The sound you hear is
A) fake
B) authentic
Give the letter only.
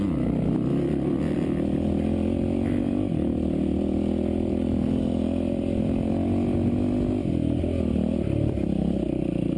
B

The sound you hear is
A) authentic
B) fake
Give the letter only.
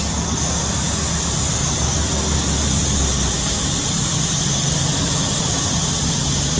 A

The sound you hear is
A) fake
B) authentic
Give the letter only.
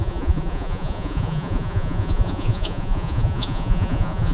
A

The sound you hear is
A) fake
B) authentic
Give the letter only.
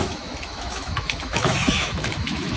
A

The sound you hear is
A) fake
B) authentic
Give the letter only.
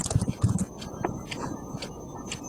B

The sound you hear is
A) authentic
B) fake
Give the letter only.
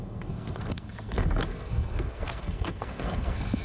B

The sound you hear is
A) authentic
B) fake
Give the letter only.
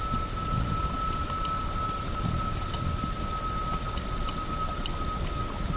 A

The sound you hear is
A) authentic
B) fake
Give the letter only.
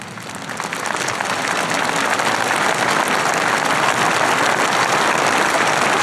A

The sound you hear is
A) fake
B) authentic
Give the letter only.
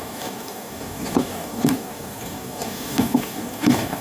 A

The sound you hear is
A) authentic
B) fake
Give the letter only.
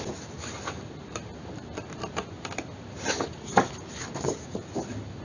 A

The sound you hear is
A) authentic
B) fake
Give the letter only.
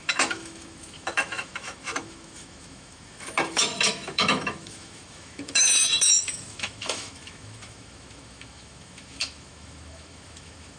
B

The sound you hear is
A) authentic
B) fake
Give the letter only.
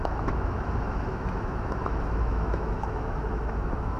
B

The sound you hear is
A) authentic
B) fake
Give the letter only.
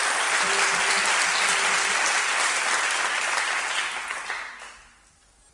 A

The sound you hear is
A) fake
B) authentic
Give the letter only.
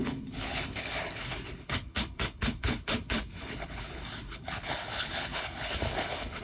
A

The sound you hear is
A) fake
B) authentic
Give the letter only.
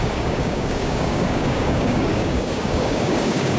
A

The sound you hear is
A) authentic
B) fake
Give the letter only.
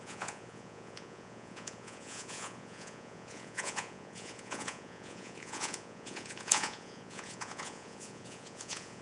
B